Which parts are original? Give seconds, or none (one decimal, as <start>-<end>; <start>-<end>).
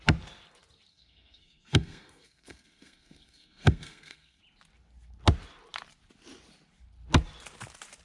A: 0.0-0.9; 4.4-8.0